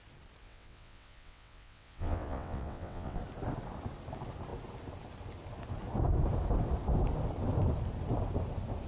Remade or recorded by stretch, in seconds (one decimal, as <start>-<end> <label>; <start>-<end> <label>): 0.0-0.4 recorded; 0.4-3.2 remade; 3.2-8.9 recorded